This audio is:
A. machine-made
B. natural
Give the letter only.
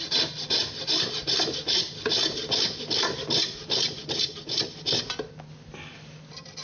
B